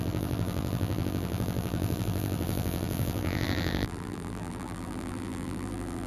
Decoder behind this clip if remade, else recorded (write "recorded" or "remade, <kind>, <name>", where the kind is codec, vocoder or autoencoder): remade, vocoder, BigVGAN v2